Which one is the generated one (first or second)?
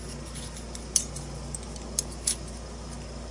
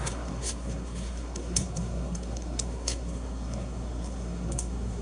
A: second